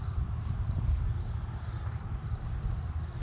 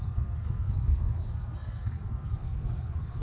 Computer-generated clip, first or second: second